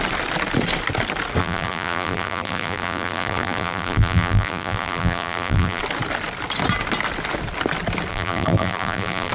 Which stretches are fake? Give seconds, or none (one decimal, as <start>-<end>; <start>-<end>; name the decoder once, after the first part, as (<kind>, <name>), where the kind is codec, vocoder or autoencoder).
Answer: 1.4-5.8 (vocoder, BigVGAN v2); 8.1-9.3

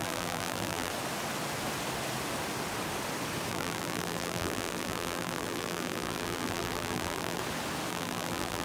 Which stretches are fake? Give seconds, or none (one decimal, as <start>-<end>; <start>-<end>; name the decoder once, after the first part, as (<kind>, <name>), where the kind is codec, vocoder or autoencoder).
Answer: 0.0-0.9 (vocoder, BigVGAN v2); 3.5-7.4; 7.9-8.6

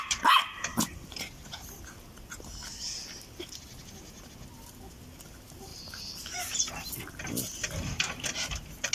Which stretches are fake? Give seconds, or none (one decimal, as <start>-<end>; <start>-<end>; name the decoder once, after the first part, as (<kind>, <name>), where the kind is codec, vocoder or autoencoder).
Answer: 5.7-6.7 (vocoder, BigVGAN v2)

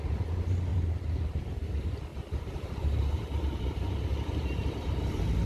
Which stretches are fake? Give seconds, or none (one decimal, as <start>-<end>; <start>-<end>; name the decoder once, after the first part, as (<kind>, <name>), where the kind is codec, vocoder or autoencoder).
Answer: 0.7-1.5 (vocoder, BigVGAN v2); 2.1-5.5

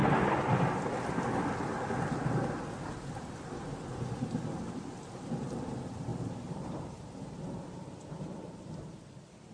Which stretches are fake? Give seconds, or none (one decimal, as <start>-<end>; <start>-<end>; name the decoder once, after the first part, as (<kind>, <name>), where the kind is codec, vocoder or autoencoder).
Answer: 6.1-8.7 (vocoder, BigVGAN v2)